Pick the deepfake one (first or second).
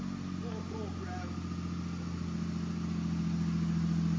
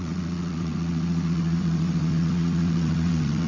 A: second